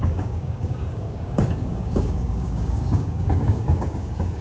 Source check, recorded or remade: remade